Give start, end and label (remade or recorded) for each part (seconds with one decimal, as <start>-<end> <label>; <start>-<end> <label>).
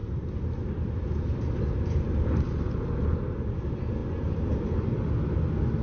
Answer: 0.0-5.8 recorded